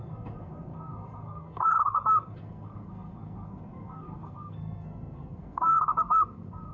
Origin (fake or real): fake